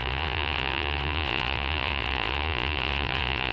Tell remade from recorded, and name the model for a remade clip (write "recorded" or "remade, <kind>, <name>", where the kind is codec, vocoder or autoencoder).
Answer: remade, vocoder, Vocos